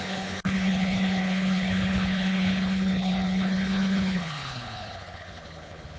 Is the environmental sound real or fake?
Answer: fake